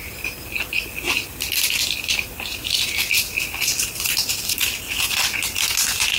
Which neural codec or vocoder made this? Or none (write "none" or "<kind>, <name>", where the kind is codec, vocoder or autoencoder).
none